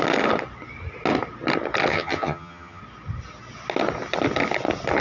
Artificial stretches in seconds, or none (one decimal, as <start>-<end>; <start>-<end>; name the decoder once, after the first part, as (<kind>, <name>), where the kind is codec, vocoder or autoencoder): 1.9-2.8 (vocoder, HiFi-GAN)